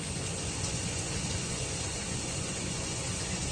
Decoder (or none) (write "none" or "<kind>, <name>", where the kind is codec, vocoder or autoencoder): vocoder, Vocos